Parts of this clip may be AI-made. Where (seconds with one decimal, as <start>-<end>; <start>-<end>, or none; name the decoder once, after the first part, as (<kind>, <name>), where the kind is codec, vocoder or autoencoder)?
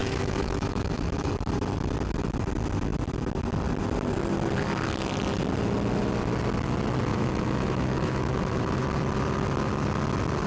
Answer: 0.0-1.3 (autoencoder, DAC-VAE); 7.1-8.8